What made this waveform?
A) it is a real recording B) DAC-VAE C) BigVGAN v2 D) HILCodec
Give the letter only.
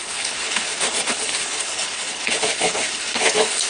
D